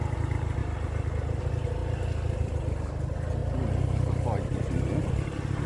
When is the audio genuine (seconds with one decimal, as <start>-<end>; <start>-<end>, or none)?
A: 0.0-5.7